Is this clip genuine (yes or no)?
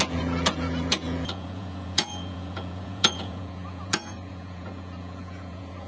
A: no